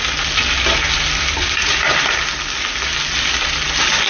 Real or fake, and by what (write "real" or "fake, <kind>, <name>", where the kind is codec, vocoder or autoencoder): real